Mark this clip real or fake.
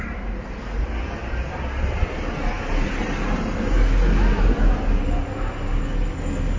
real